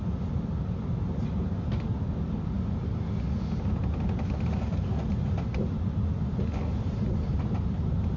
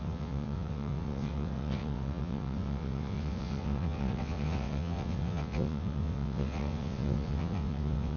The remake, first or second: second